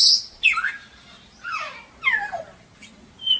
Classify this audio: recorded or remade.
recorded